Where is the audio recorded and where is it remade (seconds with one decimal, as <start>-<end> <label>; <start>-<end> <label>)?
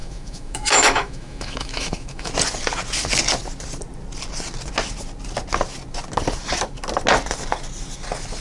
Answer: 0.0-2.3 remade; 2.3-8.4 recorded